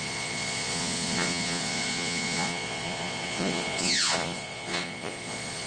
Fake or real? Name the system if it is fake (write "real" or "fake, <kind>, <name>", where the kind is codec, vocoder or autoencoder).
fake, vocoder, Vocos